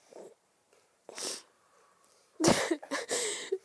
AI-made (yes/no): yes